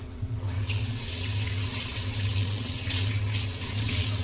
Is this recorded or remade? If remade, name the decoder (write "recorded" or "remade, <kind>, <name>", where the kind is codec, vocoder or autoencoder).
remade, vocoder, WaveNeXt